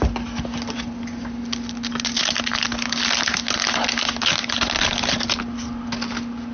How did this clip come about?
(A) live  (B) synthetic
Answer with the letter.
A